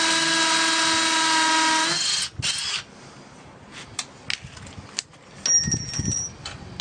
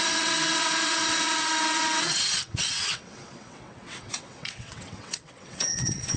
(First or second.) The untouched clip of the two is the first